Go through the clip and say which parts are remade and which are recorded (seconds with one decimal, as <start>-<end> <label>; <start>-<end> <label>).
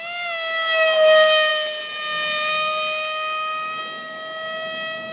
0.0-5.1 recorded